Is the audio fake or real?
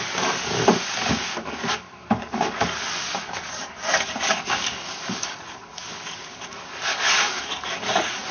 fake